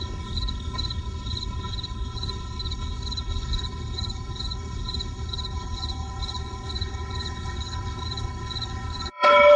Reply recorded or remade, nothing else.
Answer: remade